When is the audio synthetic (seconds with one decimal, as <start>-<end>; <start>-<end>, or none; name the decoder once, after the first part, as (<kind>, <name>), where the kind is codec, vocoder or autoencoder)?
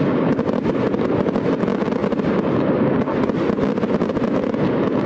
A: none